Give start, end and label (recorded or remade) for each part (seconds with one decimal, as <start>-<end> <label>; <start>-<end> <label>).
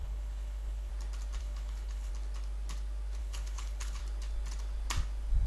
0.0-0.9 remade; 0.9-1.4 recorded; 1.4-2.1 remade; 2.1-3.2 recorded; 3.2-4.0 remade; 4.0-5.5 recorded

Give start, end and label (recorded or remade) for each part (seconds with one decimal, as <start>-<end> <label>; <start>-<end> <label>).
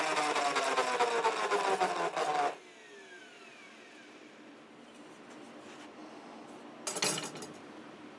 0.0-8.2 recorded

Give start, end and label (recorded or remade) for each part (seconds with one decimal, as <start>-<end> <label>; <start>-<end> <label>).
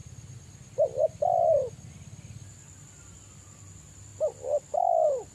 0.0-5.3 recorded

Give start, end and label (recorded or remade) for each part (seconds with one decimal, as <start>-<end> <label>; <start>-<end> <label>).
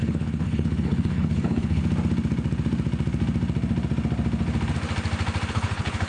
0.0-1.8 remade; 1.8-5.5 recorded; 5.5-6.1 remade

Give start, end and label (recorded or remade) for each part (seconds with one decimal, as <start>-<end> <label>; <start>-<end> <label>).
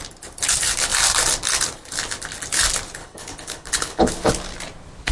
0.0-3.0 recorded; 3.0-4.3 remade; 4.3-5.1 recorded